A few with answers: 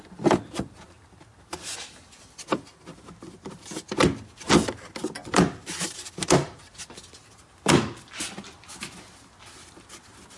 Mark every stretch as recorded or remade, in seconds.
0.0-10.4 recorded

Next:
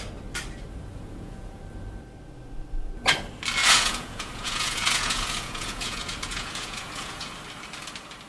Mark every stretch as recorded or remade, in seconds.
0.0-0.9 recorded; 0.9-1.6 remade; 1.6-3.6 recorded; 3.6-7.3 remade; 7.3-8.3 recorded

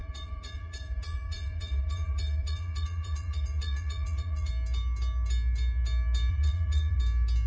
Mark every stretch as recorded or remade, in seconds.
0.0-4.5 remade; 4.5-6.3 recorded; 6.3-7.0 remade; 7.0-7.5 recorded